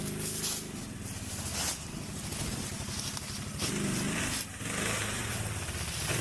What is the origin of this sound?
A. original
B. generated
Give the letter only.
A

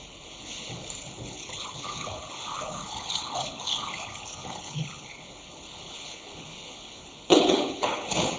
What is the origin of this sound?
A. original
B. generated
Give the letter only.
B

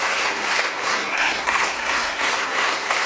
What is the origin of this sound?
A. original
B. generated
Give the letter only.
B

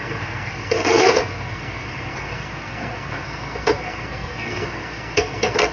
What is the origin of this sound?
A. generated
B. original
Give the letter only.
A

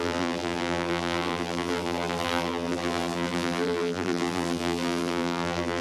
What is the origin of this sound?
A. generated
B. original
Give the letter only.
A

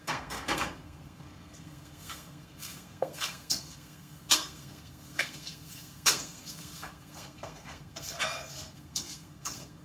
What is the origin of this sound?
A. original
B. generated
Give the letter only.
B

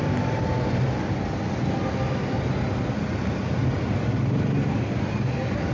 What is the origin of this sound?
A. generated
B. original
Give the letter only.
B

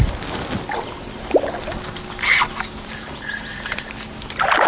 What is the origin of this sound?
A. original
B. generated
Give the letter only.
A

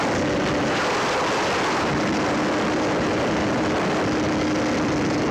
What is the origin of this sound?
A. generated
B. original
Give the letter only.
B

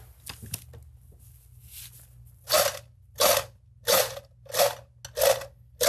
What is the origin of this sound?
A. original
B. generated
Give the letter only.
A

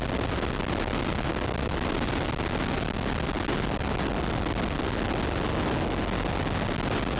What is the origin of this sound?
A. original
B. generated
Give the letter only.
A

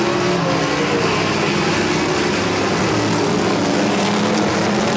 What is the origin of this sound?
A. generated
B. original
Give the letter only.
B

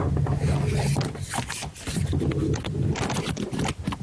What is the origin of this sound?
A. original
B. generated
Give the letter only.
A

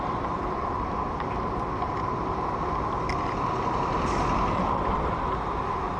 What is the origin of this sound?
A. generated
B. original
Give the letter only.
B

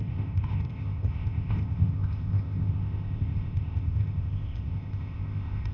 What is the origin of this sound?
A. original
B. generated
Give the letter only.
B